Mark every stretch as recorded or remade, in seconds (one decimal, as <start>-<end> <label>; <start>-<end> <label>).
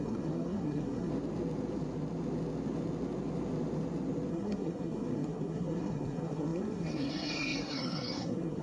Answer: 0.0-1.1 remade; 1.1-4.3 recorded; 4.3-8.6 remade